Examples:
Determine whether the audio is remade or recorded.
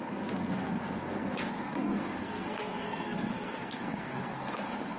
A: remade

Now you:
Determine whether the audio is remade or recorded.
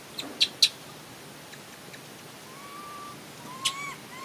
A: recorded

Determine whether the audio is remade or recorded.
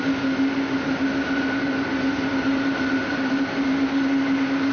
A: recorded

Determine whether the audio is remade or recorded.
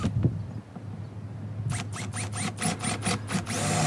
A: recorded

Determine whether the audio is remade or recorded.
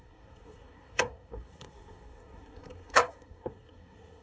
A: remade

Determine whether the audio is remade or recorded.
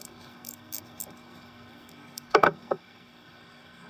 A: remade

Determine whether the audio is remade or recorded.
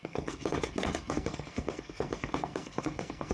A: remade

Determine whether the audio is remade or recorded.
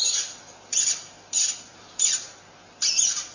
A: recorded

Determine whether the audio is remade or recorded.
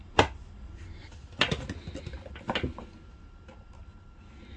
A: recorded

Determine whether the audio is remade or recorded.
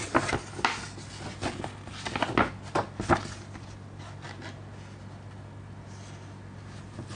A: recorded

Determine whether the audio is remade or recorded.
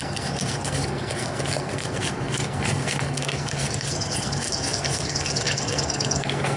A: remade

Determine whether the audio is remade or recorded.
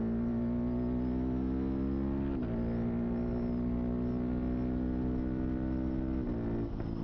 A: recorded